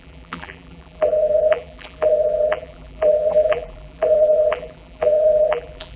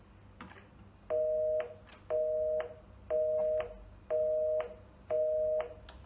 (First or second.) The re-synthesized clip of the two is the first